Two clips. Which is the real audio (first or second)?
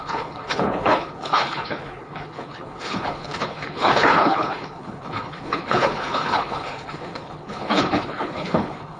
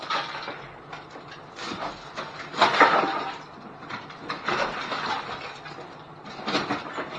second